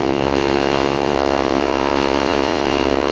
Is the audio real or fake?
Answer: fake